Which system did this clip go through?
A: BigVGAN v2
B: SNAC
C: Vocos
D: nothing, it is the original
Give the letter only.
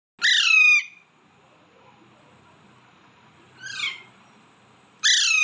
D